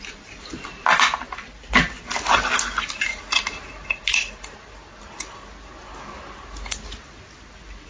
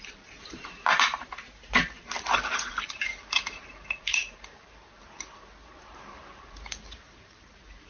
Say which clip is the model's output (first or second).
second